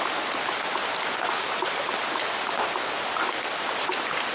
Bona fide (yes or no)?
yes